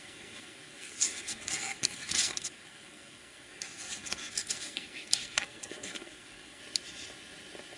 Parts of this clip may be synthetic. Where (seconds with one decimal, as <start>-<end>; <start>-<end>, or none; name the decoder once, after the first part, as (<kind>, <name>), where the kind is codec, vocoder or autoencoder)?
0.0-6.6 (codec, SNAC)